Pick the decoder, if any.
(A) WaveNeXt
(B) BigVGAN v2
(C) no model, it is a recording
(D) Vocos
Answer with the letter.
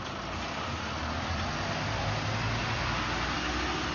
C